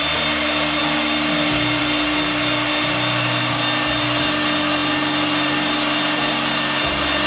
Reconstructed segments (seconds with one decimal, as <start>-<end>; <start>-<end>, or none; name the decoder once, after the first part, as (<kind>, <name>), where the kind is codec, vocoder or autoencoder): none